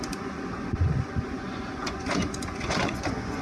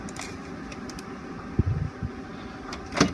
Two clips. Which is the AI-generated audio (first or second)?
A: first